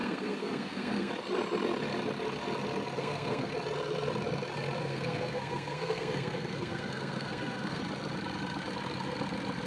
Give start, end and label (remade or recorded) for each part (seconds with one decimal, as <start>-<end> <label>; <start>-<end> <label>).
0.0-1.1 remade; 1.1-3.0 recorded; 3.0-3.5 remade; 3.5-4.8 recorded; 4.8-7.8 remade; 7.8-9.7 recorded